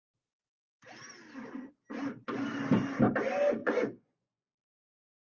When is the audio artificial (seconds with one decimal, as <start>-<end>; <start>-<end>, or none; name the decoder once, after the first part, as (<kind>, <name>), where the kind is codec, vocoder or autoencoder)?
3.6-4.6 (vocoder, Vocos)